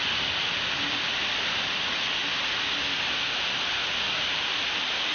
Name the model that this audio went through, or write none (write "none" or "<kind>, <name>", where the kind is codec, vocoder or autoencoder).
none